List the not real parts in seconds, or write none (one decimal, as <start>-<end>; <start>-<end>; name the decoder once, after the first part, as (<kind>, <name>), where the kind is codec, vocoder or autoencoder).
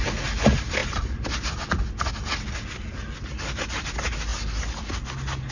none